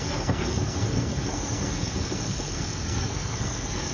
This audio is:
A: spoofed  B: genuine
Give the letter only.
A